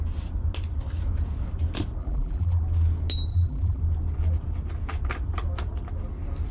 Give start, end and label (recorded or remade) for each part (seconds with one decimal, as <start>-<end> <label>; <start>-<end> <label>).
0.0-2.0 recorded; 2.0-2.6 remade; 2.6-3.3 recorded; 3.3-3.8 remade; 3.8-6.5 recorded